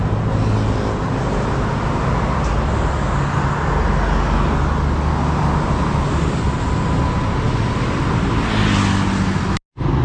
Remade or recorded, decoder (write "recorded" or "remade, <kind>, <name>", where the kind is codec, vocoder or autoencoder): recorded